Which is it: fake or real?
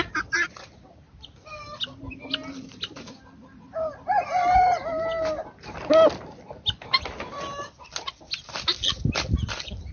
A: real